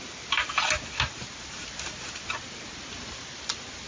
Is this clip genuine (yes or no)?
yes